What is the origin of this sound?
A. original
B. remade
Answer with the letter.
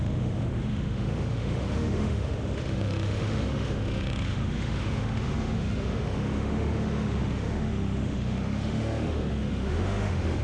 B